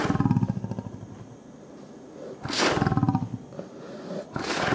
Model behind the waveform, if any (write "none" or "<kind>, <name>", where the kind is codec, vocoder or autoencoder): none